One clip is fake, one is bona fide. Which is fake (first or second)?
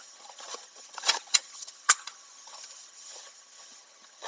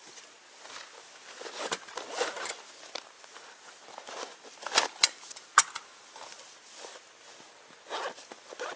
first